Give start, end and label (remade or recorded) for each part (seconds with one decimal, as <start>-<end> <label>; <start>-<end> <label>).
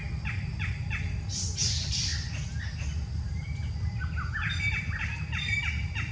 0.0-6.1 recorded